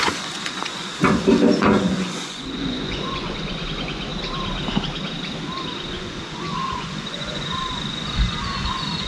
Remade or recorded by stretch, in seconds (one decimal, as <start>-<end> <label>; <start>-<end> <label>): 0.0-0.9 remade; 0.9-1.6 recorded; 1.6-4.1 remade; 4.1-5.9 recorded; 5.9-9.1 remade